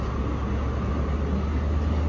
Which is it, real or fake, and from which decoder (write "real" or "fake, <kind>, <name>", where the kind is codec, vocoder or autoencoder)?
real